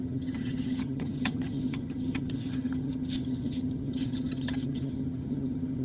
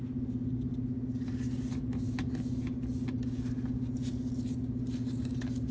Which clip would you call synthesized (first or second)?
first